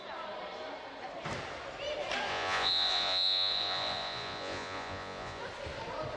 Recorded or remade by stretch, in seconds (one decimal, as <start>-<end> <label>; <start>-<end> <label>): 0.0-2.3 recorded; 2.3-5.4 remade; 5.4-6.2 recorded